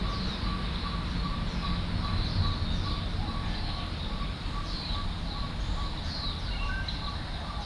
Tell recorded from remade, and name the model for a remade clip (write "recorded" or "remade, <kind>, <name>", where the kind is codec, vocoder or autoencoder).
recorded